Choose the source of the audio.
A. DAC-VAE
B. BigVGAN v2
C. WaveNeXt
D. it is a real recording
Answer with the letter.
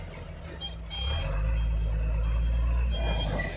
D